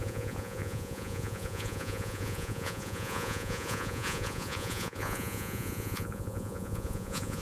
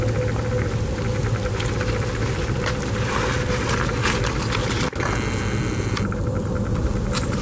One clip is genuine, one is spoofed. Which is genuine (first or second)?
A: second